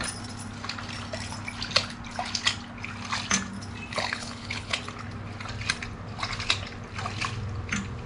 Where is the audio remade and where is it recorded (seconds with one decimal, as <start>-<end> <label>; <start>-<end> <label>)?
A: 0.0-3.9 recorded; 3.9-4.8 remade; 4.8-8.1 recorded